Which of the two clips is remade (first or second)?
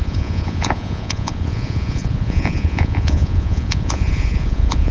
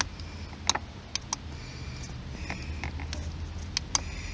first